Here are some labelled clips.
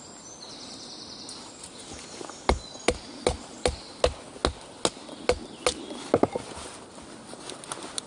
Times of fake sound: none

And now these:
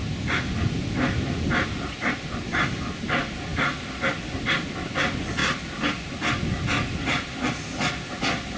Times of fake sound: none

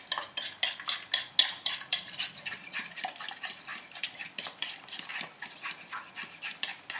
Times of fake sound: 1.4-2.4 (vocoder, BigVGAN v2); 3.7-5.1